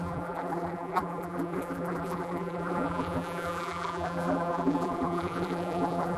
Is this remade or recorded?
remade